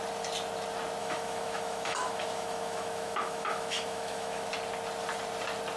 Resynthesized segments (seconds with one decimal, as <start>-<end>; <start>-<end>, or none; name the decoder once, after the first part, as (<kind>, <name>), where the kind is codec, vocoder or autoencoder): 1.0-4.5 (autoencoder, DAC-VAE)